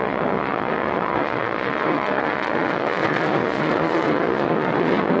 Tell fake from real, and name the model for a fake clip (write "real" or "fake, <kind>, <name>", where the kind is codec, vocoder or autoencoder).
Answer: fake, vocoder, Vocos